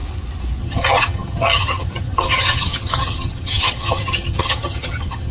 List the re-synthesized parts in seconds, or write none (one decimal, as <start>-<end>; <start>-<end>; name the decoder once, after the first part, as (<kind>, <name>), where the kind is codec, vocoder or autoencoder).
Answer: 0.6-5.3 (vocoder, HiFi-GAN)

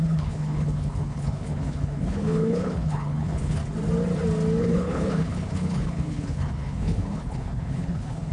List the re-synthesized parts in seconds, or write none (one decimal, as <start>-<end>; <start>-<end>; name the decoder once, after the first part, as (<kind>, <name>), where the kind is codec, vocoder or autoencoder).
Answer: 0.0-3.6 (codec, HILCodec); 4.6-8.3

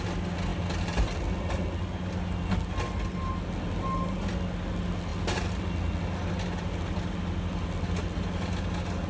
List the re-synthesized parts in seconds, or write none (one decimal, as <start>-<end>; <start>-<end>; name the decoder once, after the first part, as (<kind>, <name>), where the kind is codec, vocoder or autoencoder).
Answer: none

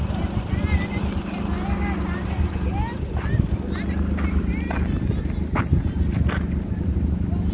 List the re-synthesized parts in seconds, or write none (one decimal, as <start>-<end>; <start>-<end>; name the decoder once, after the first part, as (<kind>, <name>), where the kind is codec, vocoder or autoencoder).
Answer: none

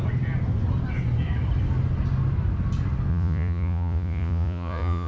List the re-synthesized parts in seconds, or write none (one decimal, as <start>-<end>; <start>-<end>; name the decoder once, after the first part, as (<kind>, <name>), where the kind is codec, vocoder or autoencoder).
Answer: 3.1-5.1 (vocoder, Vocos)